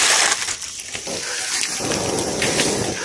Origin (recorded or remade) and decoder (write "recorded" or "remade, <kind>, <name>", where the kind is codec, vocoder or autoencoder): recorded